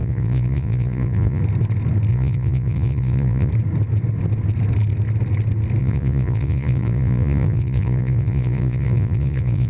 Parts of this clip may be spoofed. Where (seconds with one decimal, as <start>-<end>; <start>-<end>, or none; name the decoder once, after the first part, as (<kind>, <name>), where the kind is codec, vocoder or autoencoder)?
0.0-1.4 (vocoder, Vocos); 2.1-3.5; 5.8-9.7

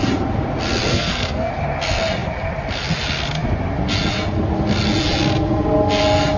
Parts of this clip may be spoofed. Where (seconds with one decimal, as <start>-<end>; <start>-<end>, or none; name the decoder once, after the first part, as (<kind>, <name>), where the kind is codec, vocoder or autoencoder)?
0.9-1.5 (codec, SNAC)

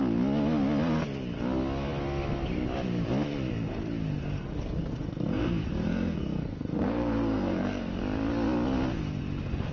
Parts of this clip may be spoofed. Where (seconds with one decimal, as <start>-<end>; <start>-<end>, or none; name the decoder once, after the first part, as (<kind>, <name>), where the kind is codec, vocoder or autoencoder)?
4.2-8.0 (codec, SNAC)

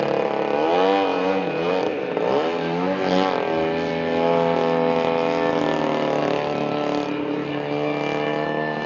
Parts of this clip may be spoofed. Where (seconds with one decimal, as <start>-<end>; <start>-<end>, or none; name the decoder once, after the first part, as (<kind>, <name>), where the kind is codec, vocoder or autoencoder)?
1.1-1.7 (vocoder, Vocos)